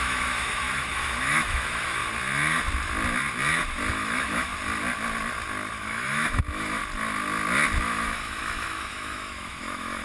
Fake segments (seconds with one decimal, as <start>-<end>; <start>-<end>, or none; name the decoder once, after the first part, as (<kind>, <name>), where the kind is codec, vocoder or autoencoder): 0.0-2.0 (autoencoder, DAC-VAE); 3.9-4.5; 5.7-6.8; 7.8-10.0